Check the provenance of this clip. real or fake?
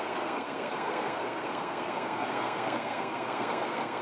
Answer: fake